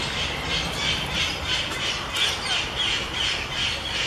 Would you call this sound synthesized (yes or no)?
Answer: no